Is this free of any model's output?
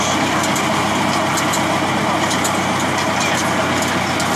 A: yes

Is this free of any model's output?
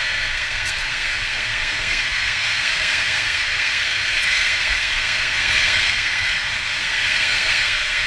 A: no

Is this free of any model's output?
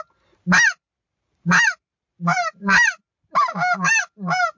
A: yes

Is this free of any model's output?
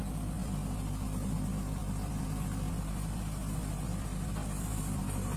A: yes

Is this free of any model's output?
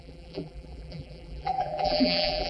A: no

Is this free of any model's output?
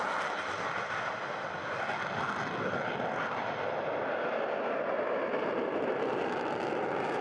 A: yes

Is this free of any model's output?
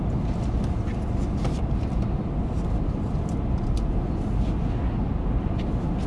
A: yes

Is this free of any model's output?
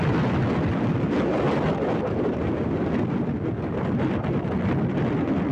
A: yes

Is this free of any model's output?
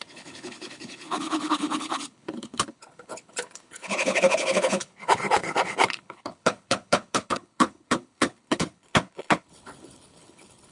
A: no